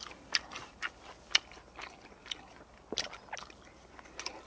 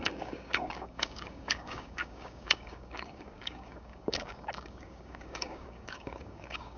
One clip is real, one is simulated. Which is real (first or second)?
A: first